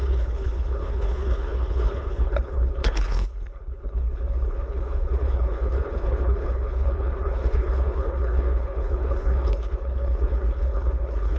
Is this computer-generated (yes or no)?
yes